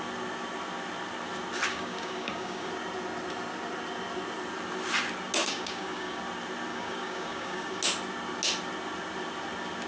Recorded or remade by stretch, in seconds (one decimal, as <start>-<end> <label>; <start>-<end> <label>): 0.0-1.7 recorded; 1.7-2.7 remade; 2.7-5.4 recorded; 5.4-6.2 remade; 6.2-6.7 recorded; 6.7-7.8 remade; 7.8-9.9 recorded